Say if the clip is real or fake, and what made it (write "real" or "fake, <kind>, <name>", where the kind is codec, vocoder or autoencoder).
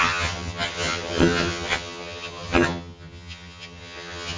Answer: fake, vocoder, HiFi-GAN